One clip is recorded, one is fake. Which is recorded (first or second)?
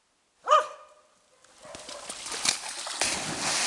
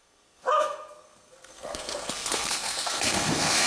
first